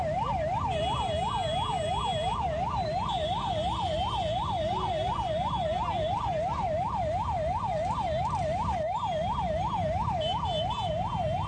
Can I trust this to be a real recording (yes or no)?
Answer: yes